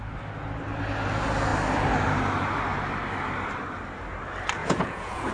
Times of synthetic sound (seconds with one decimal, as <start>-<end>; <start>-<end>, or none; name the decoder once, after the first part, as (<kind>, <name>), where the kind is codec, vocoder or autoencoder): 4.6-5.3 (vocoder, Vocos)